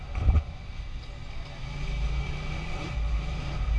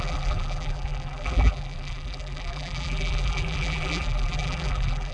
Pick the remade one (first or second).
second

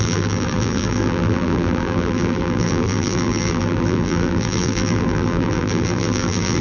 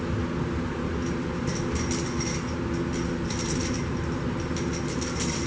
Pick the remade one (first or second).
first